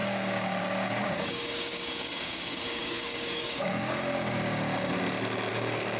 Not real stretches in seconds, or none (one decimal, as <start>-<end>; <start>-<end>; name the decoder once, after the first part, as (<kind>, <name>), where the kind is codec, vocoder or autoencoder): 0.0-4.9 (codec, DAC); 5.5-6.0